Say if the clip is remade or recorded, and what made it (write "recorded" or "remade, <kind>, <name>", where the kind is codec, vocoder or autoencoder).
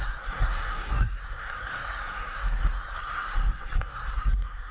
remade, codec, SNAC